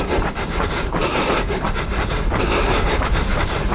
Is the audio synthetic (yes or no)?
yes